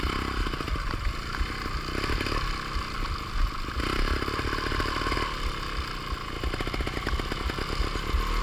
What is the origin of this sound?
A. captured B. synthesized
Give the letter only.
A